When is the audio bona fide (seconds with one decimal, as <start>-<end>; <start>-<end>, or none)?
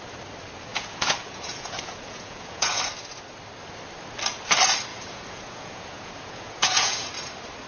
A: 0.0-0.7; 2.8-4.9; 7.1-7.7